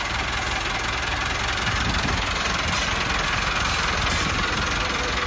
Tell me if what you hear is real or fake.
real